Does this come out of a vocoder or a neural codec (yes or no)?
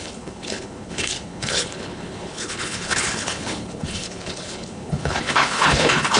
yes